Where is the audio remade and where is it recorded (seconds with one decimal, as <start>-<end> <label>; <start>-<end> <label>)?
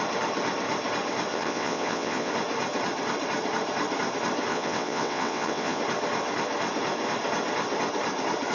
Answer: 0.0-1.3 recorded; 1.3-2.3 remade; 2.3-4.5 recorded; 4.5-5.8 remade; 5.8-8.5 recorded